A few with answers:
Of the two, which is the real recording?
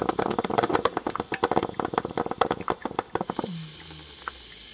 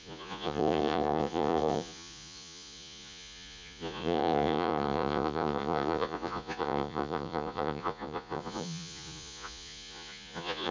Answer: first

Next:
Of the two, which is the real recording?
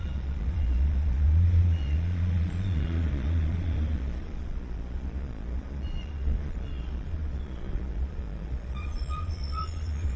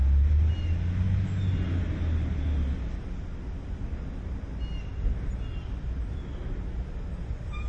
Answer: second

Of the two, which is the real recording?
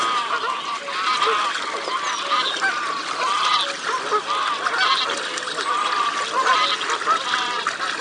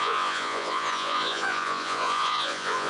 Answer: first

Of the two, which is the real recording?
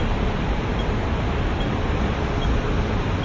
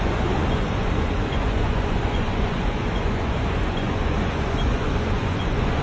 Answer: first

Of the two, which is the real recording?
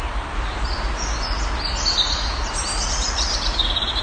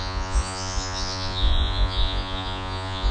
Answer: first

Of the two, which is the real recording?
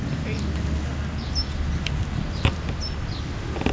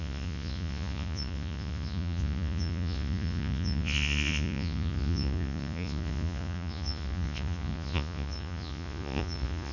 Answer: first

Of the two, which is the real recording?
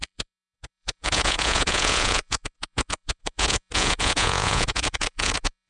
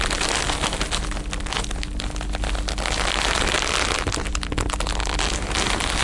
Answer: second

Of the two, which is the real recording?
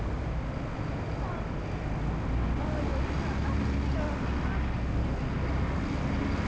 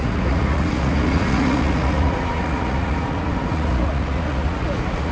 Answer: first